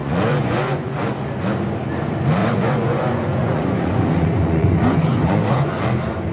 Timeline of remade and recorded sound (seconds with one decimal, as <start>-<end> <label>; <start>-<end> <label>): 0.0-0.9 remade; 0.9-2.4 recorded; 2.4-5.8 remade; 5.8-6.3 recorded